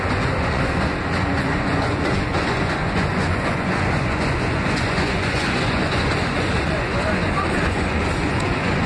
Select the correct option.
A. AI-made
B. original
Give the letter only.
A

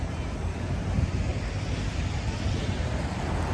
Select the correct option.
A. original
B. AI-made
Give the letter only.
A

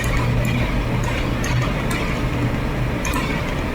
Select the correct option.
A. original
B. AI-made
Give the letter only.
A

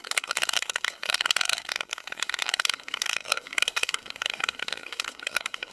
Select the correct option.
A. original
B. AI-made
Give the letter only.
B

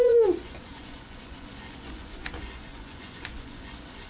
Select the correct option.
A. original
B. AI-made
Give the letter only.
B